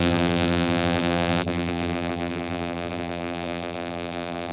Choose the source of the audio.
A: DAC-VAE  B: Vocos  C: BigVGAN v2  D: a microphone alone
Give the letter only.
C